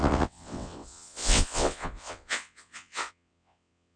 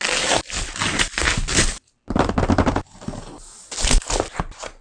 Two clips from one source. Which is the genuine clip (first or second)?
second